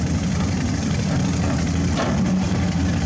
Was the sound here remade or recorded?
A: recorded